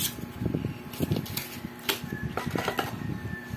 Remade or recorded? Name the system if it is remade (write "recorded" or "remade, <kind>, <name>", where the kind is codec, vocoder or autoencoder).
recorded